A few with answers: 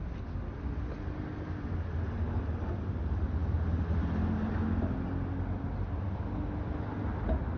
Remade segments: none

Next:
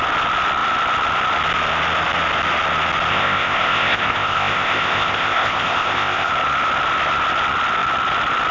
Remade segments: 3.1-6.3 (codec, ZipCodec)

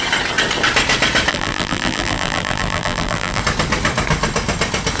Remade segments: 1.3-3.4 (vocoder, BigVGAN v2)

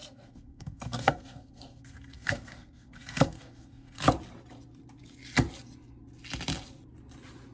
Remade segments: 0.0-4.0 (codec, SNAC)

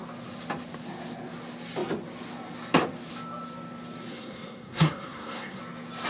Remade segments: 4.1-5.6 (codec, SNAC)

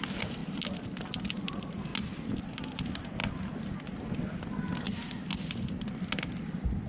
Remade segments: none

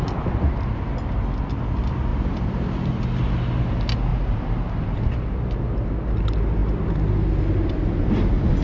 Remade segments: 2.1-3.0 (vocoder, BigVGAN v2); 4.1-5.0